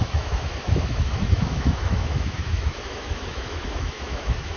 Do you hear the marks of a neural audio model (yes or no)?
yes